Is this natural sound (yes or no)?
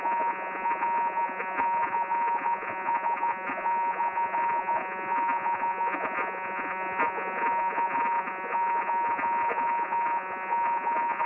no